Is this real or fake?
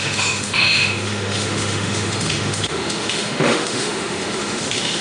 fake